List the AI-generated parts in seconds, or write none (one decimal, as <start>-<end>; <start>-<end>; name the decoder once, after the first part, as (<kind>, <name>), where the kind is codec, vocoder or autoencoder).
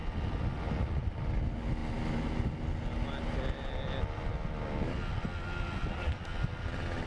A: none